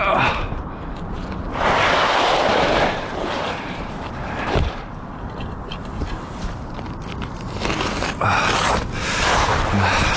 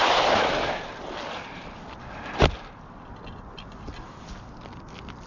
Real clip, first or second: second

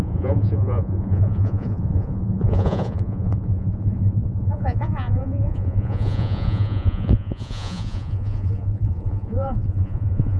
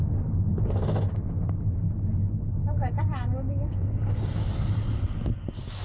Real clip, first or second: second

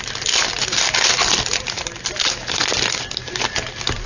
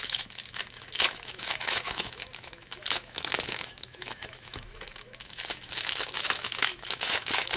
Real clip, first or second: first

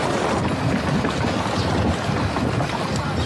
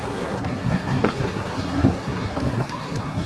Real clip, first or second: first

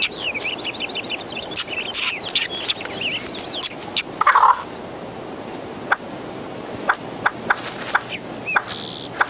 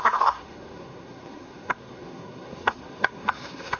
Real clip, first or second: first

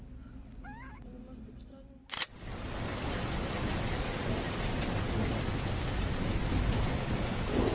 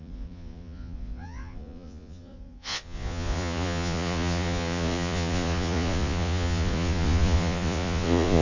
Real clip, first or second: first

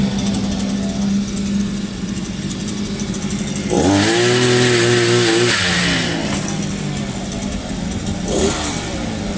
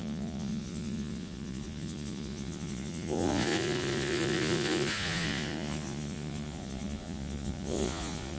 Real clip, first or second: first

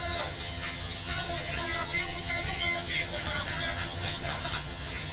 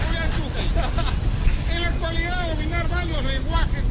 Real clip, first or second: second